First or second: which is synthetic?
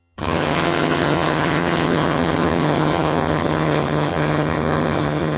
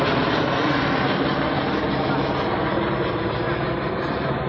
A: first